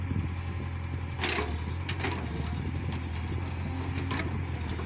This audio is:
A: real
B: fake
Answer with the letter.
A